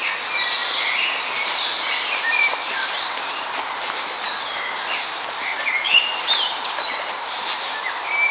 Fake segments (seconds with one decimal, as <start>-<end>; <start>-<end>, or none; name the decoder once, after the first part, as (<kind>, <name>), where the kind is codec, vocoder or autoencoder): 0.6-3.8 (vocoder, BigVGAN v2); 5.9-8.3